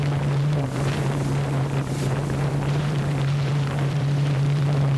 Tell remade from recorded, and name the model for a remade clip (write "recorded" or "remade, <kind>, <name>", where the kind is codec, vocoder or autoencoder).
remade, vocoder, BigVGAN v2